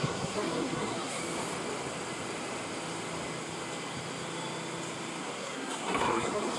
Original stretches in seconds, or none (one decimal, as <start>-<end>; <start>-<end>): 1.2-5.2